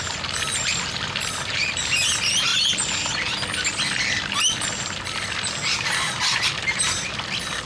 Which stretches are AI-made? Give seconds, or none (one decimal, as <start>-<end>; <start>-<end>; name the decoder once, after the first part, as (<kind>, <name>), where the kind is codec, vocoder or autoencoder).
none